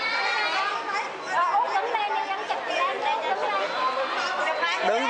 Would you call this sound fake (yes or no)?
no